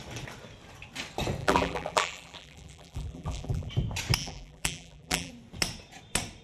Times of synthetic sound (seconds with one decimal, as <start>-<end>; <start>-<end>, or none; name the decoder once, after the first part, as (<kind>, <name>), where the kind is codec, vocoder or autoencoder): 1.4-3.7 (vocoder, BigVGAN v2); 4.2-5.3